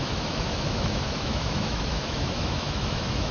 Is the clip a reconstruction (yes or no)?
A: yes